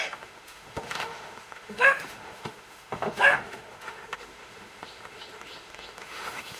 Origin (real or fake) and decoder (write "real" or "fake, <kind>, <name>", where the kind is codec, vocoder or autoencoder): fake, autoencoder, DAC-VAE